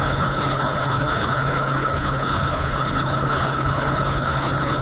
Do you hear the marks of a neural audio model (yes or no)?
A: yes